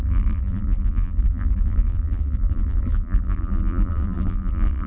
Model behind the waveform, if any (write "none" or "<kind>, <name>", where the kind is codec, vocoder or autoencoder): vocoder, BigVGAN v2